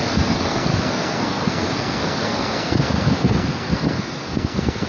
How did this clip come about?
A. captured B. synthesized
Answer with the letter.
B